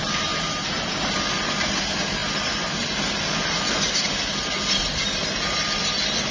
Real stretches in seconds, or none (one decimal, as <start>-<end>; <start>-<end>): 0.0-6.3